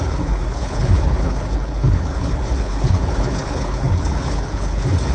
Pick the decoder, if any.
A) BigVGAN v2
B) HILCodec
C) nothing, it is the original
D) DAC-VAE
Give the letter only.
B